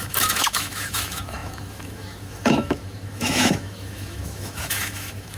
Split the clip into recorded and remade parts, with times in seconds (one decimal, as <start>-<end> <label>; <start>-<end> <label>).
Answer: 0.0-5.4 remade